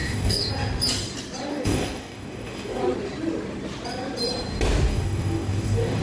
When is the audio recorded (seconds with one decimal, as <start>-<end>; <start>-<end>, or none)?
0.5-1.5; 2.8-4.9